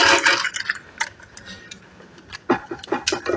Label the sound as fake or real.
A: real